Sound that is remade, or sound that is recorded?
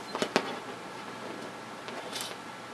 recorded